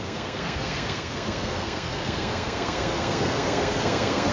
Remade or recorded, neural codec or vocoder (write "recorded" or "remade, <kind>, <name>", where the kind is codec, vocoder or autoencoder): remade, codec, SNAC